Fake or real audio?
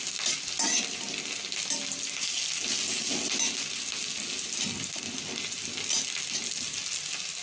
real